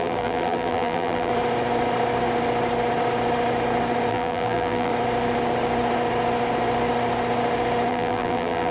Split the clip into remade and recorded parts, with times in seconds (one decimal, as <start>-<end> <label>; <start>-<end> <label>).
0.0-1.3 remade; 1.3-4.1 recorded; 4.1-4.9 remade; 4.9-7.9 recorded; 7.9-8.7 remade